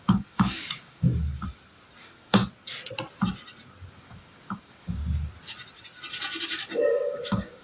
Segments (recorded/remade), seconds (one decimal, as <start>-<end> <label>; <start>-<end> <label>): 0.0-1.1 remade; 1.1-2.0 recorded; 2.0-2.4 remade; 2.4-4.0 recorded; 4.0-5.0 remade; 5.0-6.9 recorded; 6.9-7.6 remade